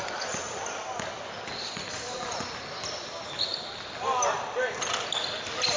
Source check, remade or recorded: recorded